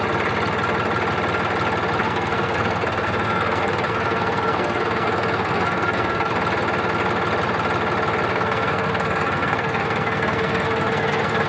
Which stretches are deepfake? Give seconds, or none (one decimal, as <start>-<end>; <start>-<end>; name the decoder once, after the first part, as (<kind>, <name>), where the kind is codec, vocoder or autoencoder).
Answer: 2.0-6.3 (codec, SNAC); 8.3-11.5